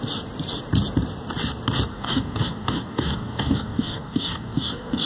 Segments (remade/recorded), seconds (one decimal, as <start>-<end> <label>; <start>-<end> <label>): 0.0-1.9 recorded; 1.9-5.1 remade